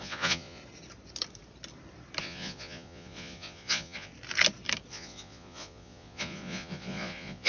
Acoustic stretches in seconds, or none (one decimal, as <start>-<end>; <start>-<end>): 0.6-2.2; 4.1-4.9